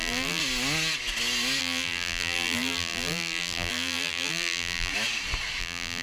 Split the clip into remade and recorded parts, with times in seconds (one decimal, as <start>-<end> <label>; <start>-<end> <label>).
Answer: 0.0-0.4 remade; 0.4-1.6 recorded; 1.6-4.9 remade; 4.9-5.6 recorded; 5.6-6.0 remade